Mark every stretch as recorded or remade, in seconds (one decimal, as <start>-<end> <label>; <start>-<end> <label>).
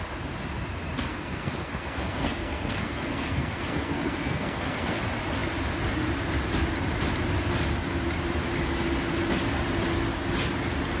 0.0-1.1 recorded; 1.1-5.0 remade; 5.0-11.0 recorded